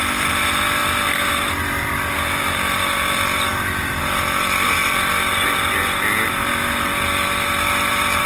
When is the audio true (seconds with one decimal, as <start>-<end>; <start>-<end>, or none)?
0.0-8.3